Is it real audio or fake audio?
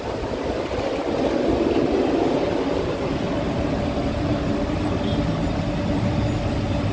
real